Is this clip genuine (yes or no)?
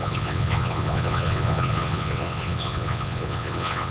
no